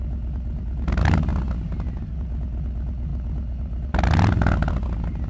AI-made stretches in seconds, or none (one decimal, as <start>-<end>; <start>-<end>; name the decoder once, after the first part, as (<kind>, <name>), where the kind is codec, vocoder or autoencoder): none